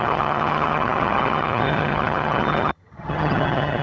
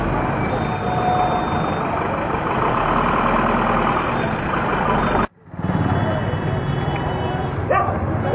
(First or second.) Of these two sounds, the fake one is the first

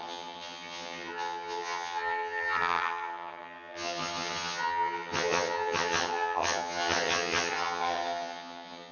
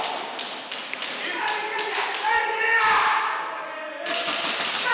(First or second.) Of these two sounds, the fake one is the first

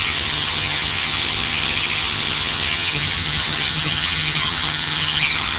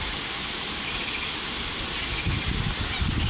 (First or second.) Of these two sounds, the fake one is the first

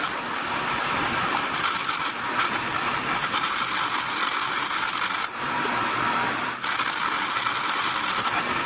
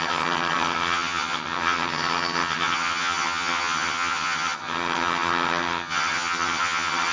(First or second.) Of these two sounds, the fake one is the second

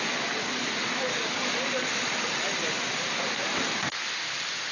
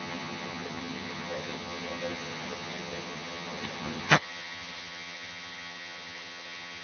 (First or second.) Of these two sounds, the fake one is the second